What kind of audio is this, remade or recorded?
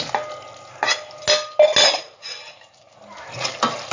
recorded